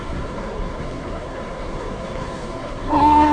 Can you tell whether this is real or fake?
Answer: fake